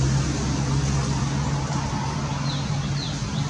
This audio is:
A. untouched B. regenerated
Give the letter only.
A